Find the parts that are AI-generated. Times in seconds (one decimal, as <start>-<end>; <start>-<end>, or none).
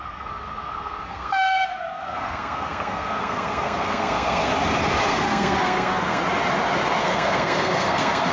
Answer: 0.0-4.5; 5.1-6.2; 7.0-8.3